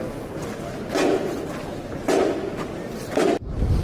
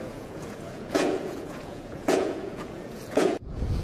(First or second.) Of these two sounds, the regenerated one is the second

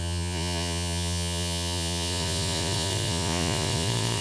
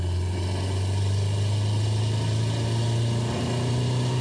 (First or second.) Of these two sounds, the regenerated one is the first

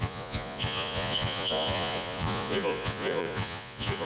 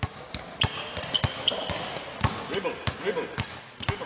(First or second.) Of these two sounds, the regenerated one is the first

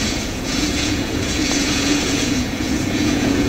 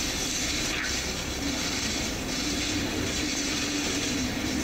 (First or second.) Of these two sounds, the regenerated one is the first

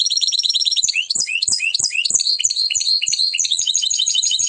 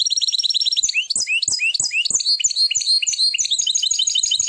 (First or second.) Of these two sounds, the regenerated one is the first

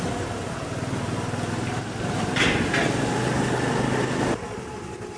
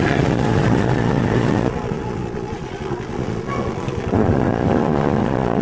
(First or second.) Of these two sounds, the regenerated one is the second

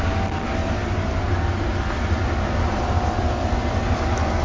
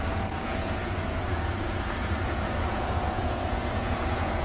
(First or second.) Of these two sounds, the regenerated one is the second